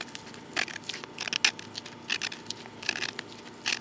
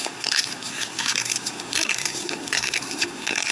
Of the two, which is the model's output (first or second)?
second